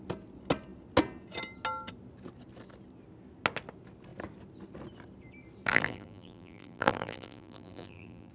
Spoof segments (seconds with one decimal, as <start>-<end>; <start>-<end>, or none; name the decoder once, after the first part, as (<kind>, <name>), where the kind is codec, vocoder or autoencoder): 5.7-8.3 (vocoder, BigVGAN v2)